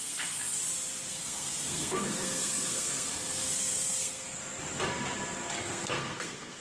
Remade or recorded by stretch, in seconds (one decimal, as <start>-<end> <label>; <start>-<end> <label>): 0.0-0.6 remade; 0.6-1.1 recorded; 1.1-4.4 remade; 4.4-5.6 recorded; 5.6-6.6 remade